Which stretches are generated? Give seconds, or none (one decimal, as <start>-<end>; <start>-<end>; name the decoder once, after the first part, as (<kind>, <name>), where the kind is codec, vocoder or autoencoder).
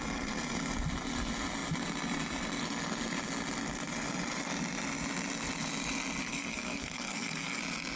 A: 6.2-7.6 (codec, SNAC)